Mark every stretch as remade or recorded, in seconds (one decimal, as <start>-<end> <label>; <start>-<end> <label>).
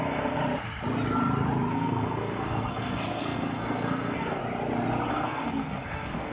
0.0-0.4 remade; 0.4-1.7 recorded; 1.7-4.4 remade; 4.4-5.1 recorded; 5.1-6.3 remade